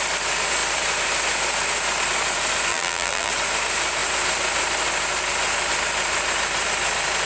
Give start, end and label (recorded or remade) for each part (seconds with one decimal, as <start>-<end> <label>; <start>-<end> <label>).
0.0-2.7 recorded; 2.7-3.3 remade; 3.3-7.3 recorded